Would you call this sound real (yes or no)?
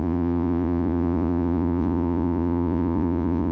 no